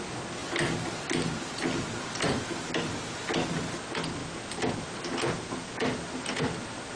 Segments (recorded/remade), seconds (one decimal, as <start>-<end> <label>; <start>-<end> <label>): 0.0-7.0 recorded